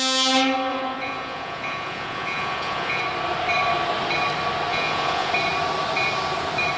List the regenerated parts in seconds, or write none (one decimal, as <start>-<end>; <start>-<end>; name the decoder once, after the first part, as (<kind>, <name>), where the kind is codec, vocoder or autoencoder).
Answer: 0.7-3.0 (vocoder, Vocos); 4.7-5.3